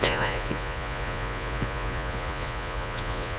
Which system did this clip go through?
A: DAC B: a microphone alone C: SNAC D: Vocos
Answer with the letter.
D